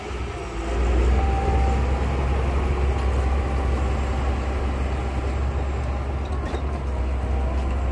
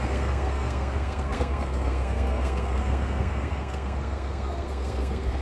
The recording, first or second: first